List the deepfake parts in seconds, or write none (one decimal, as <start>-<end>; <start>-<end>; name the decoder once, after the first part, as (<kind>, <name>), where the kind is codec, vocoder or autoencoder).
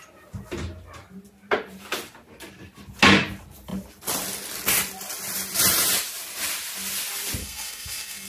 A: 7.4-8.3 (codec, SNAC)